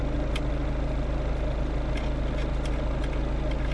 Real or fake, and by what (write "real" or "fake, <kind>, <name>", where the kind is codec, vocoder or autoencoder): real